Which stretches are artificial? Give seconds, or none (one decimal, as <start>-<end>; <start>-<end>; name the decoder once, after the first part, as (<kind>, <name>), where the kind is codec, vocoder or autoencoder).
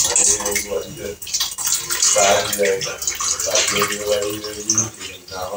none